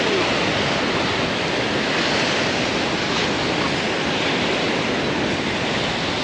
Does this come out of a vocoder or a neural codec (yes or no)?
no